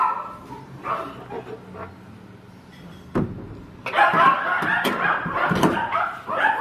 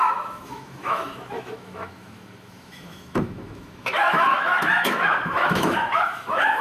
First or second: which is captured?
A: first